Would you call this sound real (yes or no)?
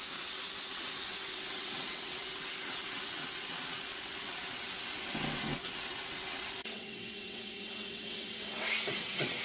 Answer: no